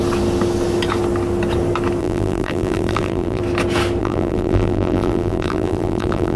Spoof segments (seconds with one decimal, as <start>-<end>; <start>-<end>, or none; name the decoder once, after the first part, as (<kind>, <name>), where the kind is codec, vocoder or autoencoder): 2.0-3.4 (vocoder, BigVGAN v2); 4.0-6.4